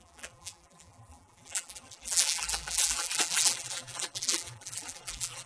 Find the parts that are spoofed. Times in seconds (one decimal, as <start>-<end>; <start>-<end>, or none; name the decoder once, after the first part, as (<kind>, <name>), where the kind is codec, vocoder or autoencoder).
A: 0.0-5.5 (vocoder, BigVGAN v2)